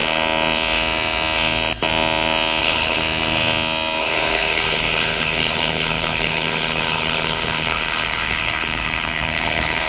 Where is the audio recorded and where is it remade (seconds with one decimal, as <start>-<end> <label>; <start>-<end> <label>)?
0.0-2.6 recorded; 2.6-3.0 remade; 3.0-4.0 recorded; 4.0-9.9 remade